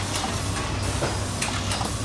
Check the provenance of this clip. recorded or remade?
recorded